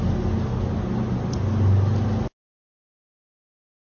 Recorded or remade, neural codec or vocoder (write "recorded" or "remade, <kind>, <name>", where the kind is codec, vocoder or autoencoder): recorded